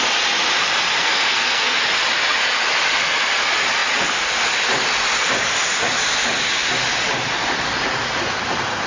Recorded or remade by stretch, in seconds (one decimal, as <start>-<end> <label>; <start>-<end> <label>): 0.0-1.0 recorded; 1.0-1.8 remade; 1.8-8.9 recorded